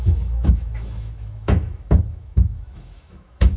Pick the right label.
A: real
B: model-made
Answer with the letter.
B